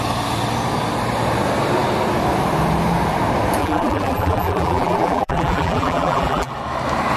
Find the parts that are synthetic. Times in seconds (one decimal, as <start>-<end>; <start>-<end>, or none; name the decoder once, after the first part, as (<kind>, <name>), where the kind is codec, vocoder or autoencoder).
3.6-6.5 (vocoder, BigVGAN v2)